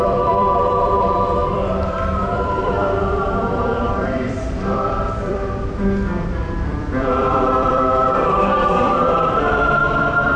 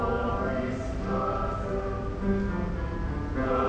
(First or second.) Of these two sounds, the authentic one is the second